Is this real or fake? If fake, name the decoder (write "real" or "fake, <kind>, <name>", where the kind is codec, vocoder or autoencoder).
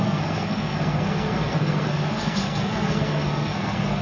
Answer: fake, codec, SNAC